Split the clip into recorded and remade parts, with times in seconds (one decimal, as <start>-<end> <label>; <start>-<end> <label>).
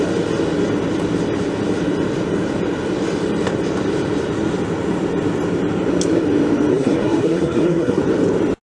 0.0-6.7 recorded; 6.7-8.0 remade; 8.0-8.8 recorded